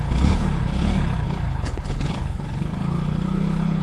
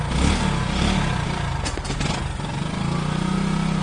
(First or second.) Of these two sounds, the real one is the second